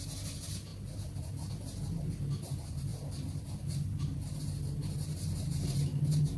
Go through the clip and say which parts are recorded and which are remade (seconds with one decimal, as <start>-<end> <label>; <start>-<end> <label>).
0.0-6.4 recorded

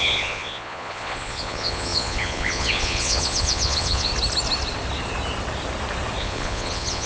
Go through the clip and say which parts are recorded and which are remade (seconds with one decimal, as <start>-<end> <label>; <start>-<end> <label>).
0.0-4.1 remade; 4.1-6.2 recorded; 6.2-7.1 remade

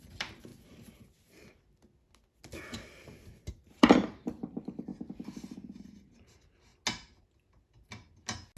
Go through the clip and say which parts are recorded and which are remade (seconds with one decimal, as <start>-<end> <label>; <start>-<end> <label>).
0.0-0.5 remade; 0.5-3.5 recorded; 3.5-4.9 remade; 4.9-6.0 recorded; 6.0-6.7 remade; 6.7-8.6 recorded

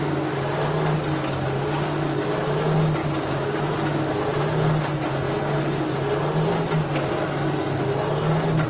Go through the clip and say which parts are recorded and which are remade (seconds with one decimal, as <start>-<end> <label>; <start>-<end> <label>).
0.0-3.0 recorded; 3.0-3.6 remade; 3.6-8.7 recorded

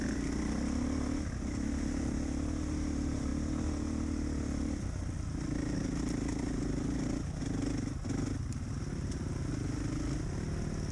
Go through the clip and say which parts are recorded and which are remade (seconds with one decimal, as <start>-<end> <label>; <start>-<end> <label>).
0.0-10.9 recorded

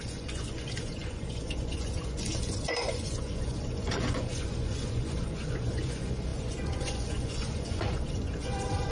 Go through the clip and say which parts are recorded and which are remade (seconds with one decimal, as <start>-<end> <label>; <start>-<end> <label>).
0.0-8.9 remade